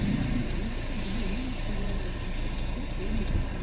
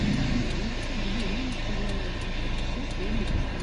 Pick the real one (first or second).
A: second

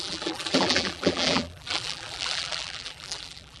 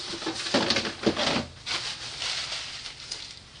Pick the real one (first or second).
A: second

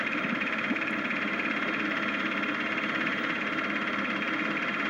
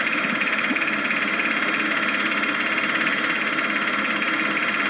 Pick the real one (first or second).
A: second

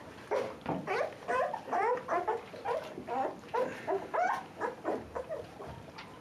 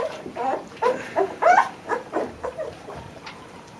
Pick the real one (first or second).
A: first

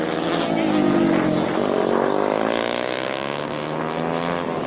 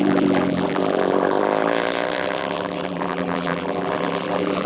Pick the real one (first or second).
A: first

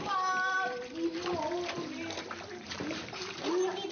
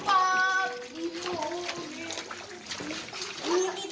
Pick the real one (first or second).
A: second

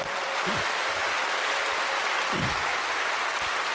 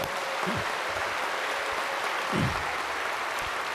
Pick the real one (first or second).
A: first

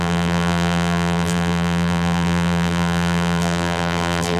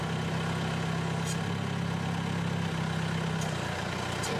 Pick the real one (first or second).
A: second